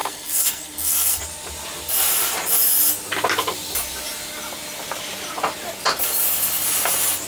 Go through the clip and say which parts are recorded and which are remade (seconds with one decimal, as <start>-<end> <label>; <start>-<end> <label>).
0.0-1.2 remade; 1.2-7.3 recorded